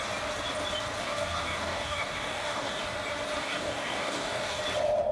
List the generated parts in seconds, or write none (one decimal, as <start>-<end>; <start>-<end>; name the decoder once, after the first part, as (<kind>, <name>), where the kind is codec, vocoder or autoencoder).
1.0-2.8 (codec, DAC); 3.4-4.6